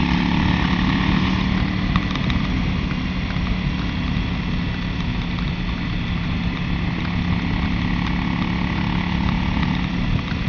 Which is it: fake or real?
real